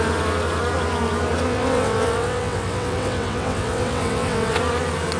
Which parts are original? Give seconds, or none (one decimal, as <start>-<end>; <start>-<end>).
0.0-1.5; 4.6-5.2